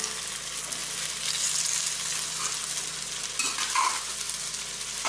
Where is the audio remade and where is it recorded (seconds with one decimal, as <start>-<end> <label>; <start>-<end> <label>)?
0.0-5.1 recorded